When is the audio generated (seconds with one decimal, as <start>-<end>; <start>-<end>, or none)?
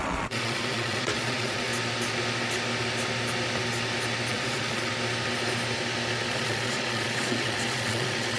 0.0-1.7; 4.3-4.9; 6.3-8.4